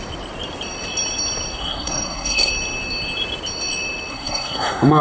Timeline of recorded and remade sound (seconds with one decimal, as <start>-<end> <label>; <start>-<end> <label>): 0.0-1.6 recorded; 1.6-2.5 remade; 2.5-4.1 recorded; 4.1-5.0 remade

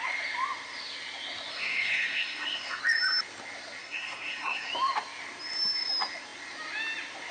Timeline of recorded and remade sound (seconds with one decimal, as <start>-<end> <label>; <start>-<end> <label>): 0.0-1.5 recorded; 1.5-2.8 remade; 2.8-3.8 recorded; 3.8-4.7 remade; 4.7-7.3 recorded

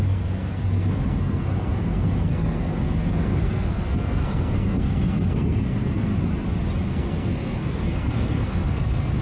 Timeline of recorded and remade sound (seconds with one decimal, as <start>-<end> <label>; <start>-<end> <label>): 0.0-6.1 remade; 6.1-6.9 recorded; 6.9-9.2 remade

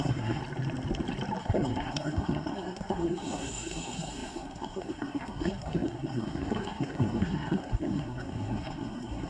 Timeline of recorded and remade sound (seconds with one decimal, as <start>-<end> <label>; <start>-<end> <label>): 0.0-0.4 remade; 0.4-1.4 recorded; 1.4-9.3 remade